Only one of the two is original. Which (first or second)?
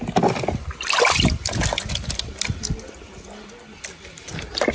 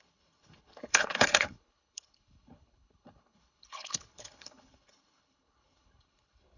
first